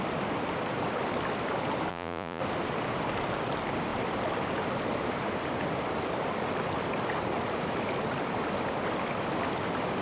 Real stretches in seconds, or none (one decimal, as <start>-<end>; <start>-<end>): 0.0-1.9; 2.4-10.0